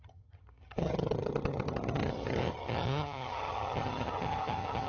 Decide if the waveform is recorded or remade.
remade